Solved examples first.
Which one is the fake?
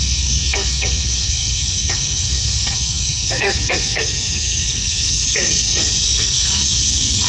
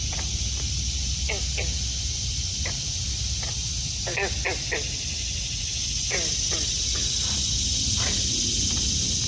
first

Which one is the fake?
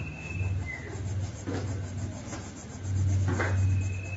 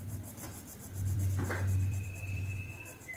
second